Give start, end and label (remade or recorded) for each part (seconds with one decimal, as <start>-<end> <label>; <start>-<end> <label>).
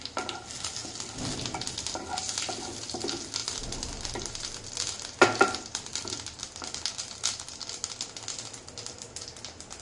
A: 0.0-3.4 recorded; 3.4-7.0 remade; 7.0-9.8 recorded